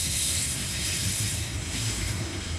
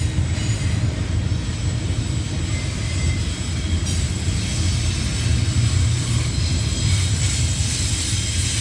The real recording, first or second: second